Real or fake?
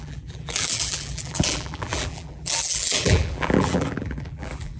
fake